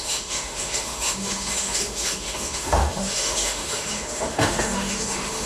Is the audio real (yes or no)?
no